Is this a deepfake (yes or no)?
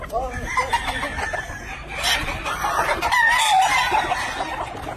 yes